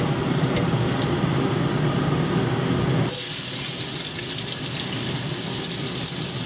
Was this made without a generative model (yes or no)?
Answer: yes